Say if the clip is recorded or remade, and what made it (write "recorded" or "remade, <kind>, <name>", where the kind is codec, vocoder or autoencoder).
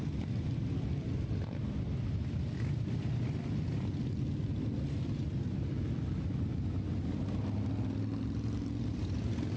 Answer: recorded